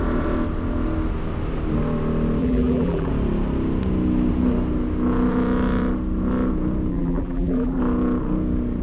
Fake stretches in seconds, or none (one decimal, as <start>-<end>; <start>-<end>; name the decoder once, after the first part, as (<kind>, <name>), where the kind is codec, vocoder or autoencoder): 2.4-3.1 (vocoder, BigVGAN v2); 6.9-7.8